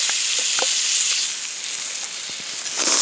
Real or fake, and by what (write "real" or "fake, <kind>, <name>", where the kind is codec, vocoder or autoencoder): real